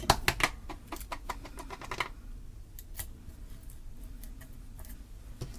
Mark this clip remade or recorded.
recorded